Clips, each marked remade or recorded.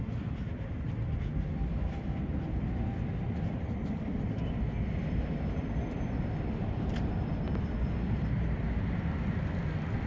recorded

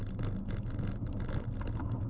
recorded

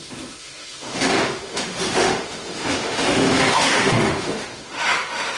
remade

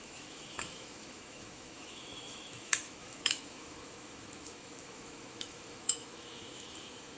remade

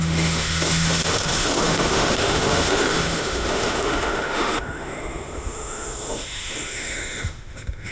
remade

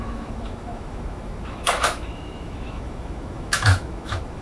remade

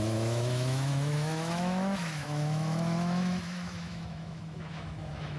remade